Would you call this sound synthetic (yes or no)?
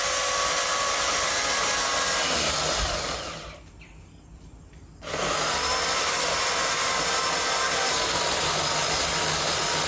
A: no